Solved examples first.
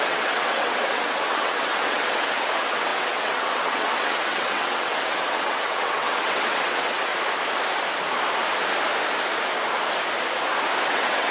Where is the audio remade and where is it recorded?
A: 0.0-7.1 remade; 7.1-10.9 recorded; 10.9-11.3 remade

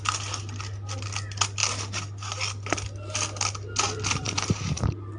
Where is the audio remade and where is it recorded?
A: 0.0-5.2 recorded

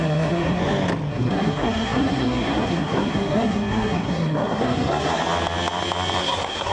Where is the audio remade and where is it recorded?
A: 0.0-0.6 remade; 0.6-1.1 recorded; 1.1-5.2 remade; 5.2-6.2 recorded; 6.2-6.7 remade

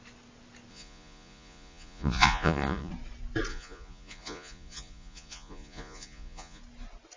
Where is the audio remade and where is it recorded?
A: 0.0-0.7 recorded; 0.7-2.9 remade; 2.9-3.5 recorded; 3.5-6.6 remade; 6.6-7.2 recorded